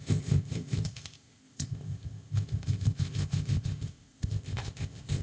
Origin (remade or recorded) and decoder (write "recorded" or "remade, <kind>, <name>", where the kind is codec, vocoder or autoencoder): remade, codec, ZipCodec